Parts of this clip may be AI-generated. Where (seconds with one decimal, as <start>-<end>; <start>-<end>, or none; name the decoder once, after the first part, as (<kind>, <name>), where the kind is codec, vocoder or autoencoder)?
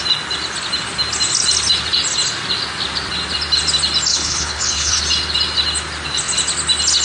4.1-5.0 (codec, HILCodec)